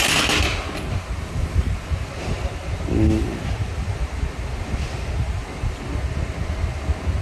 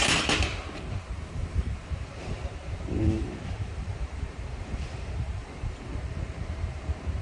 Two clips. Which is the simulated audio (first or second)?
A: second